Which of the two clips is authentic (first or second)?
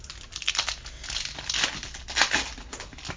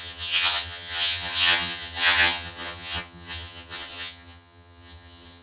first